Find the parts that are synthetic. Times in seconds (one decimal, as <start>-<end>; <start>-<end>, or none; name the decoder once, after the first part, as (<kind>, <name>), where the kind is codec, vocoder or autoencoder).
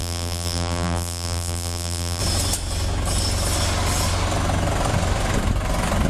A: 0.0-2.2 (vocoder, BigVGAN v2)